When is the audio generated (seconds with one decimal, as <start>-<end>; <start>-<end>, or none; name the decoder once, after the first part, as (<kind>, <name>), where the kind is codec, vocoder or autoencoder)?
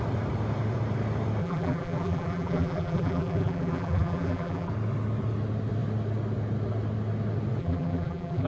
1.4-4.7 (vocoder, BigVGAN v2); 7.6-8.5